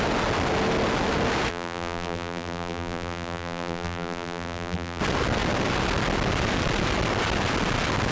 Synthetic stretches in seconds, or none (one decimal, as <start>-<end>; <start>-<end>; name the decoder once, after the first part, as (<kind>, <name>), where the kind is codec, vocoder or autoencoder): 1.5-5.0 (vocoder, BigVGAN v2)